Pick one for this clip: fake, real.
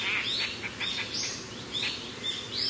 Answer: real